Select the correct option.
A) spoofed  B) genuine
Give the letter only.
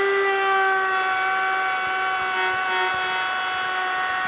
B